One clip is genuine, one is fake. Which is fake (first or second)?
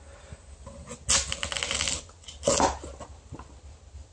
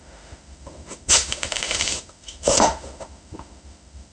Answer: second